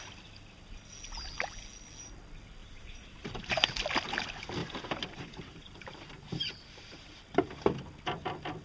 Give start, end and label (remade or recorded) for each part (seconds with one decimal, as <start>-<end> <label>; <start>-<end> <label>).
0.0-2.6 recorded; 2.6-3.4 remade; 3.4-4.6 recorded; 4.6-7.1 remade; 7.1-8.6 recorded